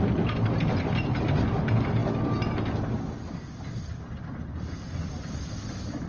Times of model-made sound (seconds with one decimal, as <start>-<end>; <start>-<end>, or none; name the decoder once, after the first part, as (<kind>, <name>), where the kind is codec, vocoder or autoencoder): none